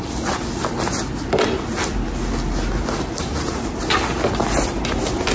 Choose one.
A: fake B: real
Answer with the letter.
B